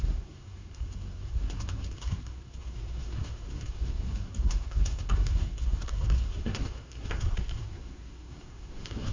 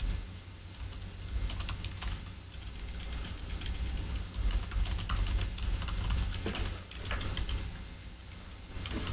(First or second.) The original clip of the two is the second